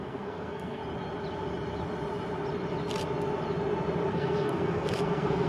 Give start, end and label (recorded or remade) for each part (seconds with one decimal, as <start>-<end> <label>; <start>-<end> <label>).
0.0-0.8 remade; 0.8-4.1 recorded; 4.1-5.5 remade